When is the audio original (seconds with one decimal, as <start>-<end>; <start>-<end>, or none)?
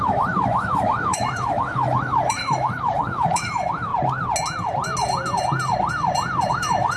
3.9-6.5